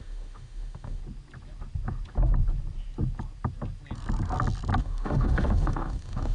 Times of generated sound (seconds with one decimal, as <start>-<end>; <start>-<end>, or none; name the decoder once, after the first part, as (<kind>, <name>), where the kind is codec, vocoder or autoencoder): 0.0-1.0 (autoencoder, DAC-VAE); 4.8-6.3